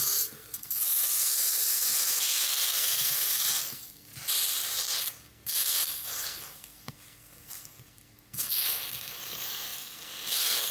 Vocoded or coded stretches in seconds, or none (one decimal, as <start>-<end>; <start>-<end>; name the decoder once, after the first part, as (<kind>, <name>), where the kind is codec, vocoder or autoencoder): 0.0-4.1 (codec, SNAC); 5.0-10.7